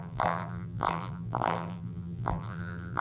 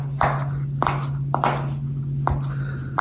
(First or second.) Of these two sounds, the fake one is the first